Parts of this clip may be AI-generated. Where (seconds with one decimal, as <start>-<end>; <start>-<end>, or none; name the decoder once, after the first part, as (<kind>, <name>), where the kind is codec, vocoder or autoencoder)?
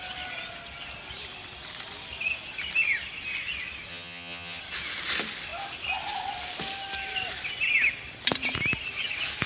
3.9-4.6 (vocoder, HiFi-GAN)